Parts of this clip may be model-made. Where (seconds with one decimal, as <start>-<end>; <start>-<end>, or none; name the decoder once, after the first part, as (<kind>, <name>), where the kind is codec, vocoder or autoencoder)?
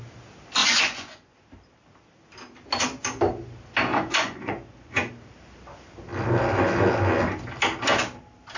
0.6-1.4 (vocoder, Vocos); 3.9-5.1